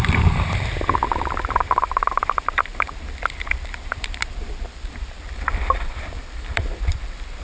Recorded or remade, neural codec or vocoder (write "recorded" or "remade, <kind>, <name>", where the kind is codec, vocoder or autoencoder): remade, vocoder, BigVGAN v2